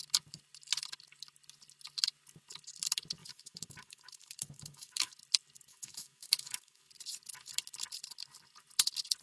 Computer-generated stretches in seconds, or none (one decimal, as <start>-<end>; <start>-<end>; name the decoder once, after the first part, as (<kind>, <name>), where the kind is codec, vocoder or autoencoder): 3.2-5.1 (autoencoder, DAC-VAE); 5.7-6.9